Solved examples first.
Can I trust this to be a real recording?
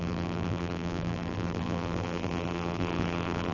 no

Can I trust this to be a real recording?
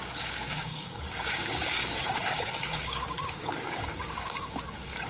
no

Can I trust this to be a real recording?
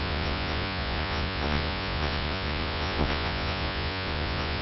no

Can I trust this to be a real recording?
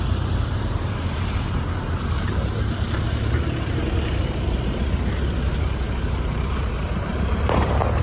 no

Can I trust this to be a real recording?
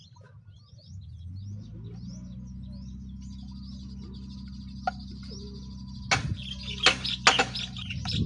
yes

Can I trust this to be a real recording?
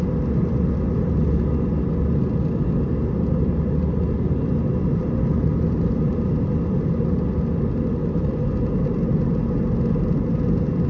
yes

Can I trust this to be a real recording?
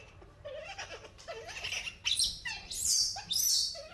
yes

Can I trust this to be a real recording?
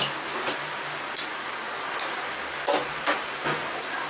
yes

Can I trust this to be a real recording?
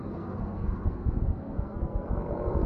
no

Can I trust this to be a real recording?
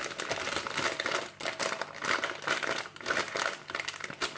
yes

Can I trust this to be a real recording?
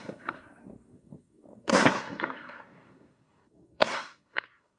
no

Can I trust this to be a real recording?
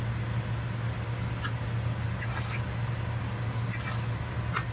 yes